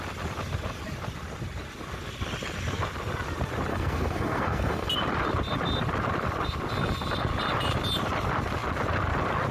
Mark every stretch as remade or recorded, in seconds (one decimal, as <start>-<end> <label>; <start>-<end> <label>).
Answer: 0.0-3.7 recorded; 3.7-4.9 remade; 4.9-9.5 recorded